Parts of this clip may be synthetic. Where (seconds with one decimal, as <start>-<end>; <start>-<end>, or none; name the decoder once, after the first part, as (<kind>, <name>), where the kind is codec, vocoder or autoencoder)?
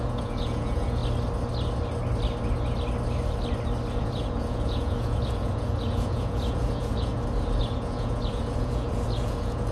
0.0-1.0 (vocoder, Vocos); 4.0-7.1; 7.6-9.7